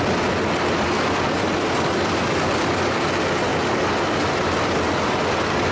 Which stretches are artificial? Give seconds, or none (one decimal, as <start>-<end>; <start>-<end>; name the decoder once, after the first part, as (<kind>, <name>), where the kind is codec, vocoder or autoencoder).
none